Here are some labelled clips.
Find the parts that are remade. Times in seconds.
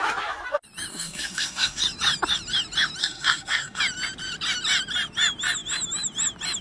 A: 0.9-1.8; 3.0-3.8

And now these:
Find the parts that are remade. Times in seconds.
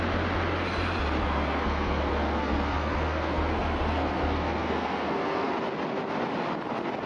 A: 1.2-5.5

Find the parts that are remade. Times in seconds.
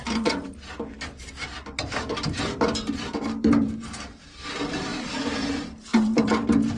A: 0.0-6.8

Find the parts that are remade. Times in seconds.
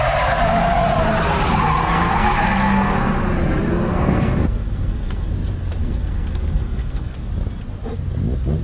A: 1.8-3.2; 3.9-5.3; 5.8-7.3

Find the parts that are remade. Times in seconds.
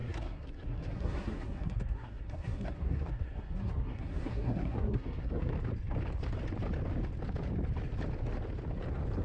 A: 0.0-5.5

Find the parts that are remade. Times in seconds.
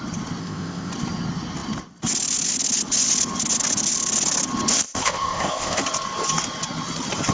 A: 0.4-0.9; 4.7-5.8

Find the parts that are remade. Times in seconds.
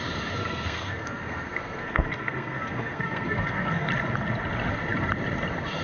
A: 0.4-3.9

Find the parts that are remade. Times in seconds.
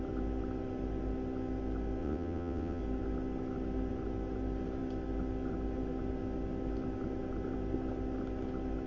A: 2.0-2.8